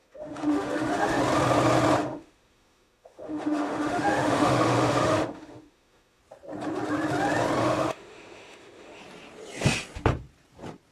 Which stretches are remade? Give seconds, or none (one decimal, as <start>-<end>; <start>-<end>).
0.0-1.2; 2.0-6.2; 7.6-9.0